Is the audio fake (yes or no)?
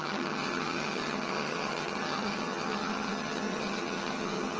yes